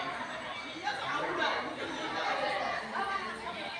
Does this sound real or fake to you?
real